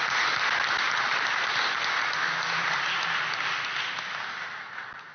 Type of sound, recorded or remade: recorded